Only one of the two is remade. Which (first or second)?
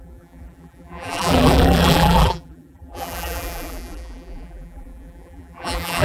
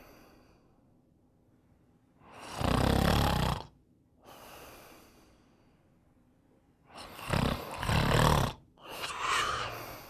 first